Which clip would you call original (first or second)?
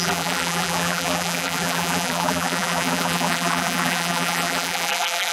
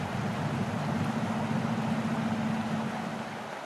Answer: second